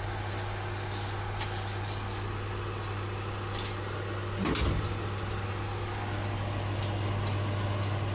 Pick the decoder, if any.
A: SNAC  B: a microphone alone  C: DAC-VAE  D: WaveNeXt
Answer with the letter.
B